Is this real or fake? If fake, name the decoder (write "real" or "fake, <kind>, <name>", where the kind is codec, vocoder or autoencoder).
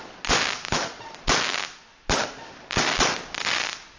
real